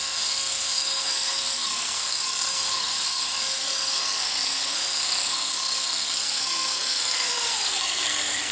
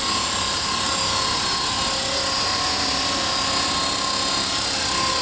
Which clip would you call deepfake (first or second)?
first